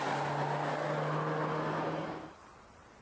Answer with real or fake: real